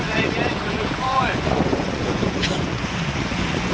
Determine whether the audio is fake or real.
fake